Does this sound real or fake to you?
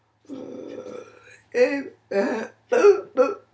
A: real